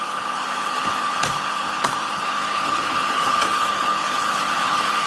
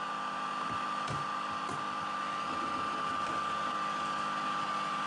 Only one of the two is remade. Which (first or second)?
first